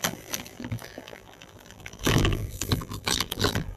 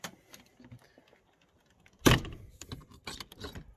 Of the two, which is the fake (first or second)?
first